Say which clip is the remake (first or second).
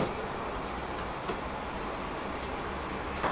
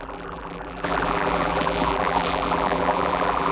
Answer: second